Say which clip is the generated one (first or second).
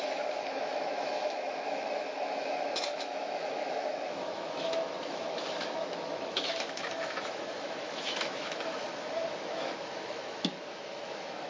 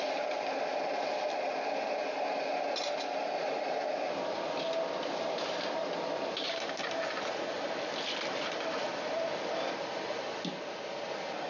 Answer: first